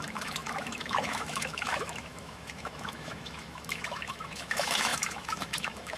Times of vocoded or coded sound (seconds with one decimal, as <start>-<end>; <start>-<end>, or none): 0.0-6.0